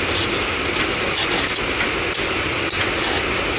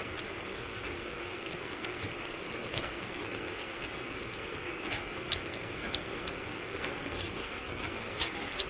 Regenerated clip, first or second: second